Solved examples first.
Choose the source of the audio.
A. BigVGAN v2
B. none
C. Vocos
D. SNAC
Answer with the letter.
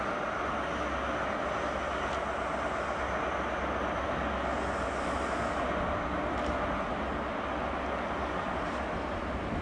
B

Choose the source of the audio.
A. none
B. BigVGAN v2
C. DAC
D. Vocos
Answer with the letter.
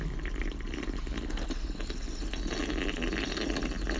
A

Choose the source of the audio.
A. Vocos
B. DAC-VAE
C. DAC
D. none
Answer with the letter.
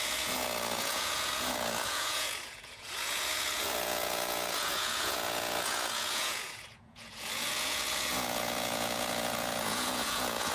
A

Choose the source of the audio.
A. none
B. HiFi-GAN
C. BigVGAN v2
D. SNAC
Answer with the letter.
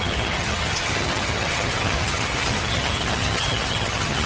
B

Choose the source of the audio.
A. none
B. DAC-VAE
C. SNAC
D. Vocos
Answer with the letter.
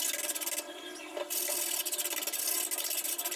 A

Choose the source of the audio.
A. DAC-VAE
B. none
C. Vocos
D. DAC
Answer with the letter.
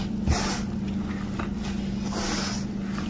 B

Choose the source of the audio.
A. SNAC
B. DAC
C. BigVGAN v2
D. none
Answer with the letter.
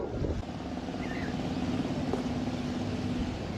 D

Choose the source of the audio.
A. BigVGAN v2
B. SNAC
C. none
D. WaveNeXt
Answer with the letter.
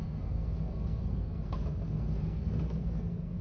B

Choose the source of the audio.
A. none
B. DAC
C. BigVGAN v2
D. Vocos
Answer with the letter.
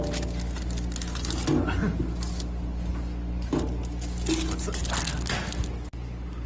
A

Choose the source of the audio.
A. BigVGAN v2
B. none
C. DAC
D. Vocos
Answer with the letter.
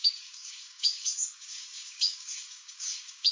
C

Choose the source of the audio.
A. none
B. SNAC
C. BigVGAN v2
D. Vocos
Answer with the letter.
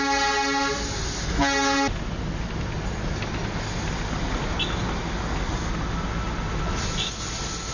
A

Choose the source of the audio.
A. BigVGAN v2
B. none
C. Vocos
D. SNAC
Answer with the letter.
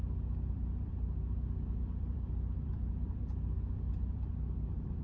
A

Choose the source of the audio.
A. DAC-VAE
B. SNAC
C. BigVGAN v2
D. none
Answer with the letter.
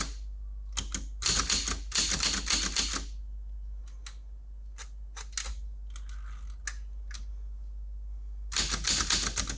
D